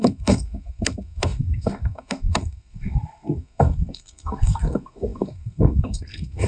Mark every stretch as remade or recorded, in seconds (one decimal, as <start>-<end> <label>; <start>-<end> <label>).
0.0-6.5 remade